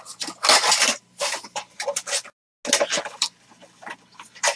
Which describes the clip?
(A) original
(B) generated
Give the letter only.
A